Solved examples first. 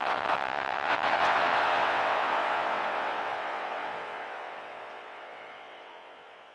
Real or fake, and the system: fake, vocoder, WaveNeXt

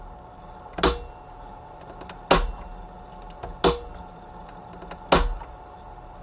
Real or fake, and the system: real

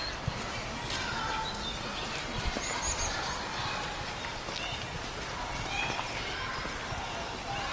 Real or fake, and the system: real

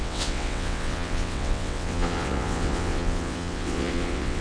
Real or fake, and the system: fake, vocoder, WaveNeXt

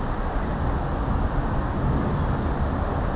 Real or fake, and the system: real